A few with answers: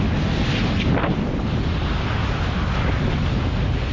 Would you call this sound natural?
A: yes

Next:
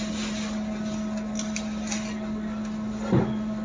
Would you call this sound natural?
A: yes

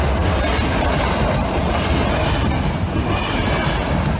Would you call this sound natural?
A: yes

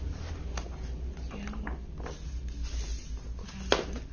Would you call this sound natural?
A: yes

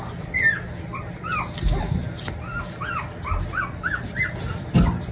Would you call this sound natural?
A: yes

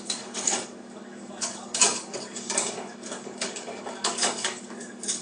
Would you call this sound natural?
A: no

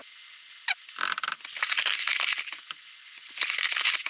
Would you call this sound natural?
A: yes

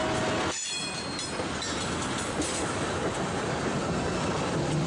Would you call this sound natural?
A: yes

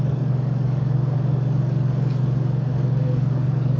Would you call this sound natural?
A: no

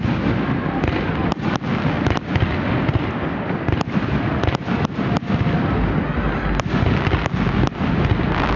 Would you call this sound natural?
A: yes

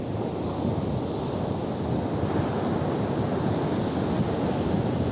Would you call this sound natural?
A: yes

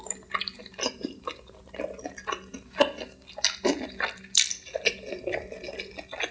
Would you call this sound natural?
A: yes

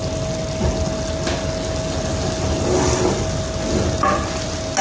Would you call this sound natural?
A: yes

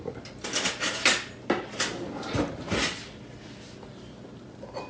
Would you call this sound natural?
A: yes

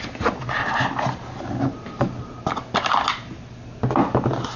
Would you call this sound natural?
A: yes